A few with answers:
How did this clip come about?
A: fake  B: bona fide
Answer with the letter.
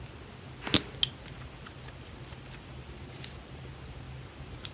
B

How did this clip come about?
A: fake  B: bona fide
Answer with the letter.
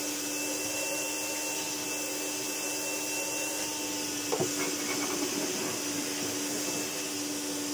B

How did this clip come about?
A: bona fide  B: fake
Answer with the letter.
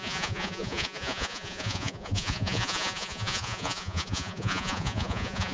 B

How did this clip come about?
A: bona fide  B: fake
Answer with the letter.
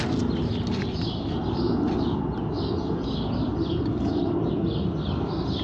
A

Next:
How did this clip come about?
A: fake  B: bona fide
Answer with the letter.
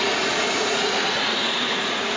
A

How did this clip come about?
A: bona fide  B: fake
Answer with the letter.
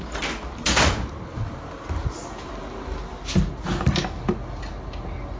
A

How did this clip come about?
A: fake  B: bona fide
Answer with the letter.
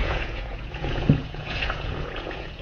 A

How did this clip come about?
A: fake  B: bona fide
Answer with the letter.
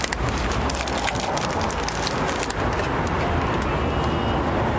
B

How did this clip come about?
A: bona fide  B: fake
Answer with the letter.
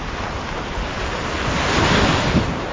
A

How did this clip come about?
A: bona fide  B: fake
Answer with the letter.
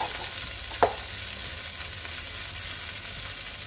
A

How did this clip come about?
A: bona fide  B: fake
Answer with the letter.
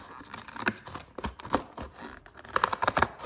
A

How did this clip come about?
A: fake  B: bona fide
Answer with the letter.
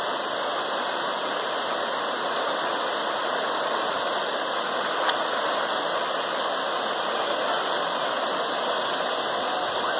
B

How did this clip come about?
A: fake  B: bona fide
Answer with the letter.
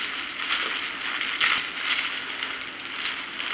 B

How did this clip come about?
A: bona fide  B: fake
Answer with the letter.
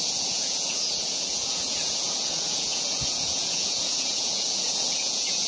B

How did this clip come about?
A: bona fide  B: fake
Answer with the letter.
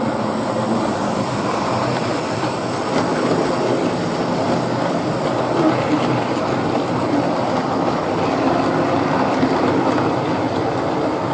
A